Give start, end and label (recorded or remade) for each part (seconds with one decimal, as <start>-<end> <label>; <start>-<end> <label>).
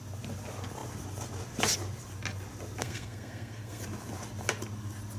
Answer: 0.0-2.8 recorded; 2.8-3.8 remade; 3.8-5.2 recorded